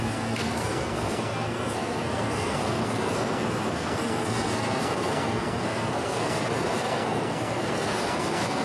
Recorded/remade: remade